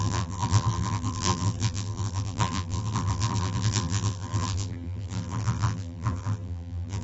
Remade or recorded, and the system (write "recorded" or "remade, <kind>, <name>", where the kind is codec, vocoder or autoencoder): remade, vocoder, BigVGAN v2